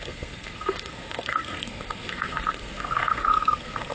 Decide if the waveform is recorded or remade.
remade